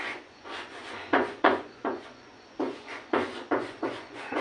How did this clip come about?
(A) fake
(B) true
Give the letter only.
A